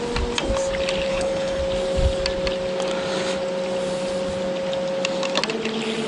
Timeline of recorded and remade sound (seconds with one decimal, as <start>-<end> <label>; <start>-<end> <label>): 0.0-1.1 recorded; 1.1-1.6 remade; 1.6-6.1 recorded